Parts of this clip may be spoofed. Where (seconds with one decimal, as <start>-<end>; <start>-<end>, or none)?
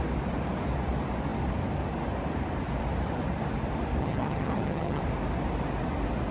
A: 4.0-5.0